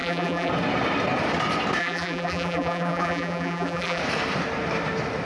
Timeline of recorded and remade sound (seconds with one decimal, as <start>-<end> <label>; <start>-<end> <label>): 0.0-0.5 remade; 0.5-1.8 recorded; 1.8-4.0 remade; 4.0-5.2 recorded